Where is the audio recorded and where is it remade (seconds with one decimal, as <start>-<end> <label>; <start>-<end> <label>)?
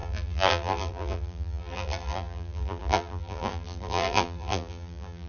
0.0-5.3 remade